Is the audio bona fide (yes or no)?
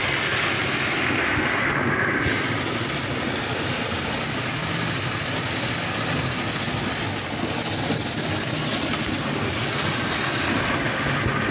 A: yes